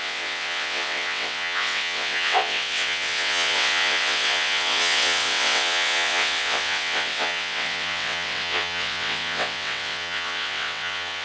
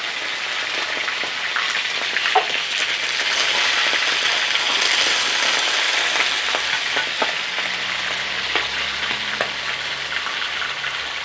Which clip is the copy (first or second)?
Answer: first